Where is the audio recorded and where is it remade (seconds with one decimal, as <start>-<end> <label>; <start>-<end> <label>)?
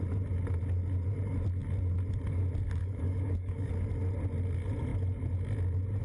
0.0-2.8 recorded; 2.8-3.7 remade; 3.7-6.0 recorded